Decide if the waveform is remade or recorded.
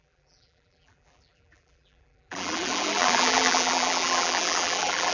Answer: remade